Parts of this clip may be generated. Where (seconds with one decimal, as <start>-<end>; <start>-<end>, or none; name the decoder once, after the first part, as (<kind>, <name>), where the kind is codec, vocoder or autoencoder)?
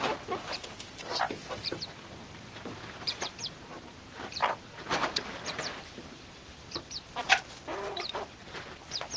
1.4-3.7 (vocoder, BigVGAN v2); 4.4-7.3; 7.7-8.5